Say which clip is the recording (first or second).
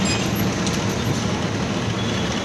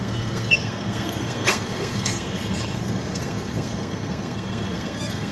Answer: first